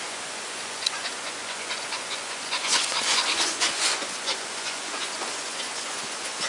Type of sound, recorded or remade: remade